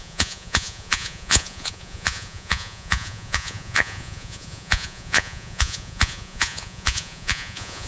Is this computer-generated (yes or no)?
yes